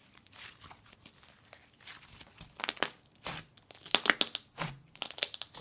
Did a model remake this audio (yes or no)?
no